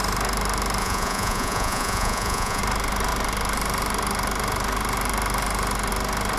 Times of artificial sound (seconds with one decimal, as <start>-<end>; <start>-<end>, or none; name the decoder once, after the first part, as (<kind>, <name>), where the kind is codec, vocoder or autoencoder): 0.8-2.6 (vocoder, Vocos)